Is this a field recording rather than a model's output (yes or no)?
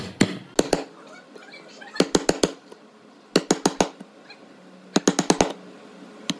yes